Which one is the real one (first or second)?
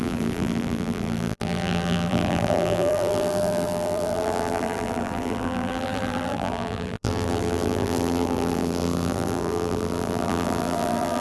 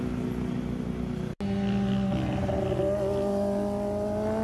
second